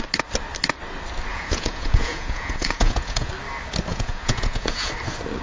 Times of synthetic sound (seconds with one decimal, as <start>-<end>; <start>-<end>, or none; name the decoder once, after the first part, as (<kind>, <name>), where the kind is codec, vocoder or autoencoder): 1.3-3.3 (vocoder, Vocos); 3.9-4.9

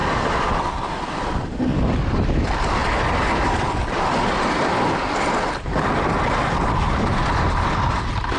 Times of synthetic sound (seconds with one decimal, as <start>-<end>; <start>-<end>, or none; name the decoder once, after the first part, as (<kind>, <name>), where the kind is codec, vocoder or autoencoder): none

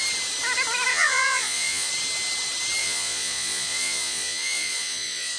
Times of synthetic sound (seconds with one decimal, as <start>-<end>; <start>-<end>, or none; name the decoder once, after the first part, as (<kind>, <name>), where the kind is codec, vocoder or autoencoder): 0.9-1.9 (vocoder, Vocos); 2.8-5.4

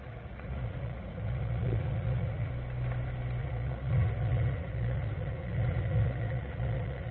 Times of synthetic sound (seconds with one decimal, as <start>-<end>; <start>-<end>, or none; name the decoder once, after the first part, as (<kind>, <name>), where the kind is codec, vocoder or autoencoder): 0.0-2.5 (vocoder, Vocos); 3.4-7.1

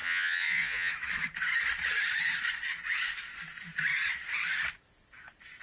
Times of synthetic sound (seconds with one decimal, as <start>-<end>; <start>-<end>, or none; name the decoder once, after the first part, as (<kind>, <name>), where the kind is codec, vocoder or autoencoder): 0.0-0.9 (vocoder, Vocos)